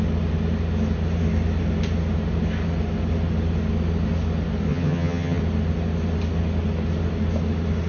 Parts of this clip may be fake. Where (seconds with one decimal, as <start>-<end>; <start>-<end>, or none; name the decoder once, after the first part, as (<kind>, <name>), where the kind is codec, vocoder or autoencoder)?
4.7-5.4 (vocoder, HiFi-GAN)